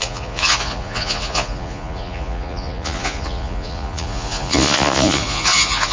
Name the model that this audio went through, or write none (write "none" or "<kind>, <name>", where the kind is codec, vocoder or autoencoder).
vocoder, Vocos